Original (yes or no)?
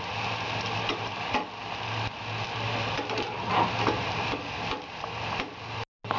yes